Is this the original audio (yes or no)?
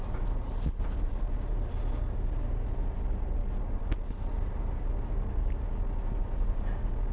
yes